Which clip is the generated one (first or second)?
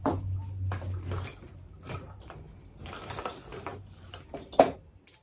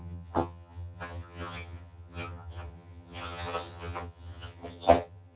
second